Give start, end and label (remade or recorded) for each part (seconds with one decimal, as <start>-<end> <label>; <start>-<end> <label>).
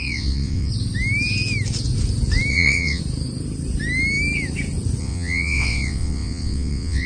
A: 0.0-0.7 remade; 0.7-2.5 recorded; 2.5-3.0 remade; 3.0-5.0 recorded; 5.0-7.1 remade